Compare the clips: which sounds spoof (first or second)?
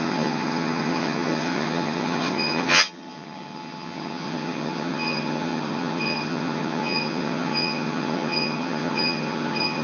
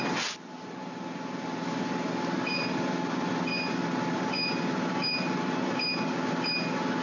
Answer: first